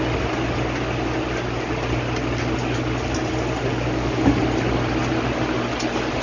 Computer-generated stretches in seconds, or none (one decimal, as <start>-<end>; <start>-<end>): 3.7-4.4